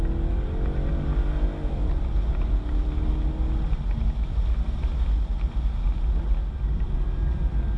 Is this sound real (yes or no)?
yes